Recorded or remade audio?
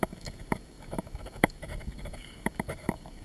remade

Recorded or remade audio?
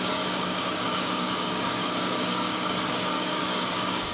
remade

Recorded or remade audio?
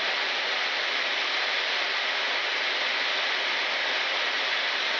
recorded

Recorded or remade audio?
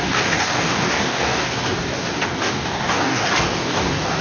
remade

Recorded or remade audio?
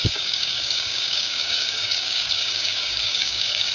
remade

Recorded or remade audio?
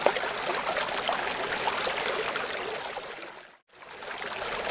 recorded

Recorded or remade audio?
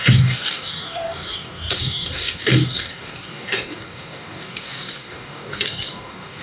remade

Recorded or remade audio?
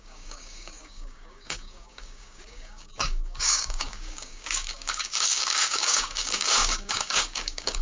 remade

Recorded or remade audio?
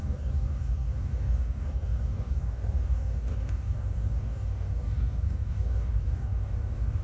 remade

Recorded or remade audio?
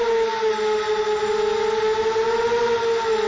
recorded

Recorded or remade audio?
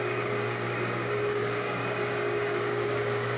remade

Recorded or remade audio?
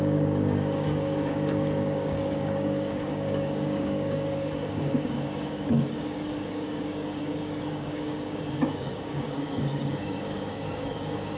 remade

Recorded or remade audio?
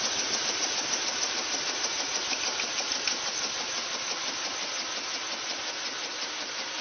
recorded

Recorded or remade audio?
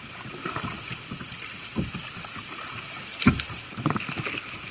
recorded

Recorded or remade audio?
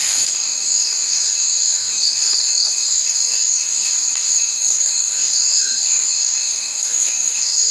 remade